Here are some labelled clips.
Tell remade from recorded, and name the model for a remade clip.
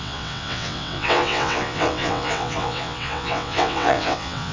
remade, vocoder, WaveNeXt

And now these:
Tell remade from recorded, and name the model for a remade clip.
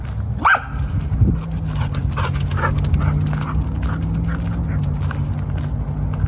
recorded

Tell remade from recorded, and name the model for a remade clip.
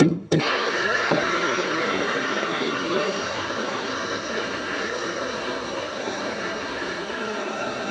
remade, codec, SNAC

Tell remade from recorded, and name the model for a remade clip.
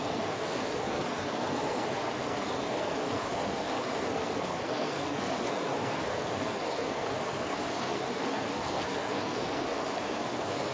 remade, codec, SNAC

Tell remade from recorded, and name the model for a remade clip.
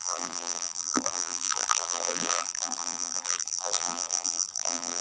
remade, vocoder, BigVGAN v2